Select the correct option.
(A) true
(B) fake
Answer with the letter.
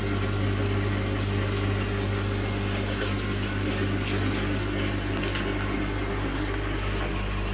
A